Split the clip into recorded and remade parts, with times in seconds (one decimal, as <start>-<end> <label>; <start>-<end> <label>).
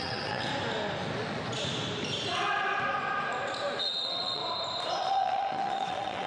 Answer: 0.0-0.5 remade; 0.5-3.8 recorded; 3.8-4.4 remade; 4.4-5.0 recorded; 5.0-6.3 remade